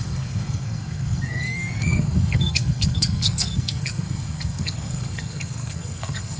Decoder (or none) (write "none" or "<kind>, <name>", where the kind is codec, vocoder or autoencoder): codec, SNAC